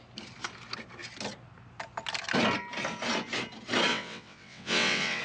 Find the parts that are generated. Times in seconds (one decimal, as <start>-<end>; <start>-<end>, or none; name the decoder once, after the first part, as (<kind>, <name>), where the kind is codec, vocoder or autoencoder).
3.9-5.2 (vocoder, WaveNeXt)